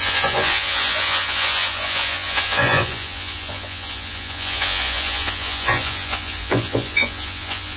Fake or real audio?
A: fake